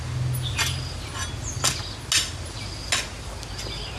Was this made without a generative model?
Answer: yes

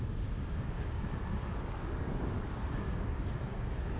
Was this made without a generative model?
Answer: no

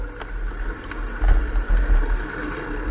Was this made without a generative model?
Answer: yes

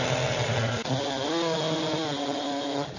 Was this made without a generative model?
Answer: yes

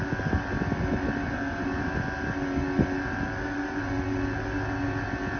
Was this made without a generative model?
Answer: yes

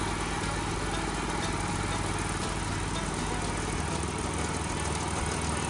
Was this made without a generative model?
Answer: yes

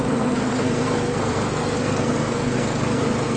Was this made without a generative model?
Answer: no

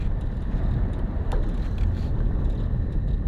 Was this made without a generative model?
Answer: yes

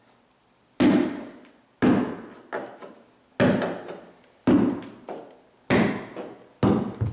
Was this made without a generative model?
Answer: yes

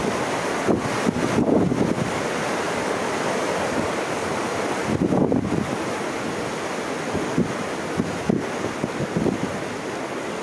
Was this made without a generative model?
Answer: yes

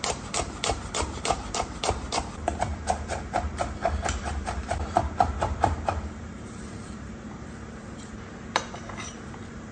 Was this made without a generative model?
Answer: no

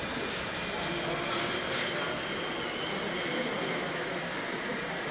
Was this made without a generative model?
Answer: yes